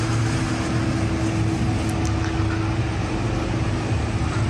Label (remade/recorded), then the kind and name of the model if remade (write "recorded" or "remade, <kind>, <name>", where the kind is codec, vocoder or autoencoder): recorded